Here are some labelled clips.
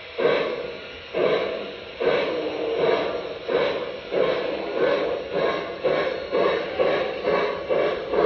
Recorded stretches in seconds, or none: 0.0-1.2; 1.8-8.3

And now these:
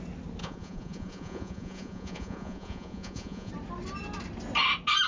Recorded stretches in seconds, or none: 0.0-0.4; 3.5-5.1

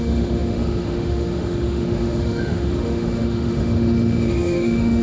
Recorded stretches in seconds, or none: none

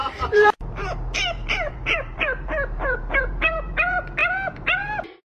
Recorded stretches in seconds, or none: none

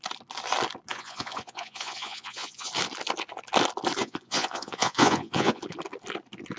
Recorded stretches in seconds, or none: 0.0-0.9; 2.7-4.0; 5.6-6.6

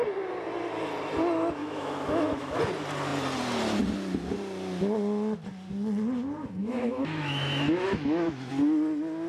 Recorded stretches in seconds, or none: 0.0-1.6; 2.6-6.6; 8.5-9.3